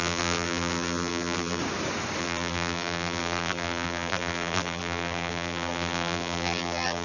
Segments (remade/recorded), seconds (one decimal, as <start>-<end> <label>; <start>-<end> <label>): 0.0-1.6 remade; 1.6-2.2 recorded; 2.2-7.0 remade